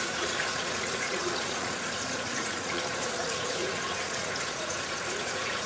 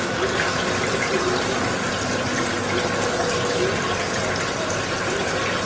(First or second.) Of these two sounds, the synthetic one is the first